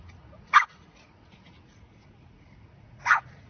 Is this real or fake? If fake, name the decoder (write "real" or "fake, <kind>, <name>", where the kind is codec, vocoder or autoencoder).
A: fake, vocoder, Vocos